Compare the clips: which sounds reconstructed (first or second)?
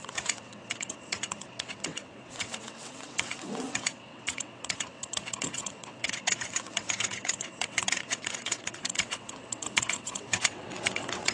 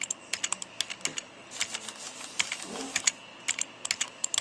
first